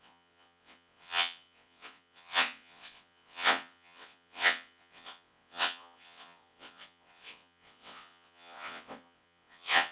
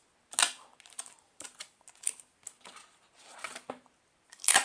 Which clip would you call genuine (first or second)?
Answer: second